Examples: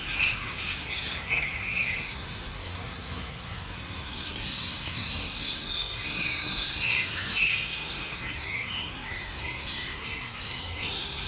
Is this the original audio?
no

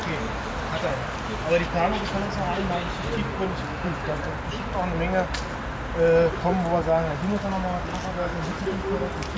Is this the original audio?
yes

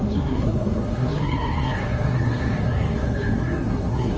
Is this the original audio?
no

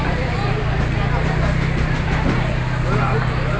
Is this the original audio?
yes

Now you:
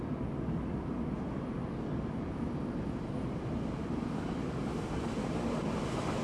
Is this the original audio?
yes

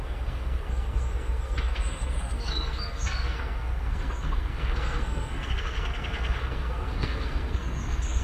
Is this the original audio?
no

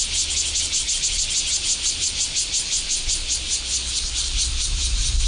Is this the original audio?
yes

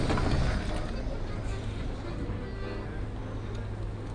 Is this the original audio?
yes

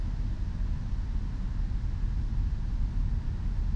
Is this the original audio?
yes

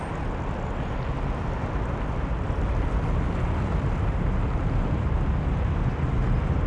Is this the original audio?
yes